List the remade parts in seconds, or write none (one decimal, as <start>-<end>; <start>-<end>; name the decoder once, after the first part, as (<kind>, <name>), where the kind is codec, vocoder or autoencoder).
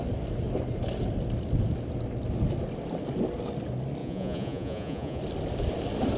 4.0-5.2 (vocoder, Vocos)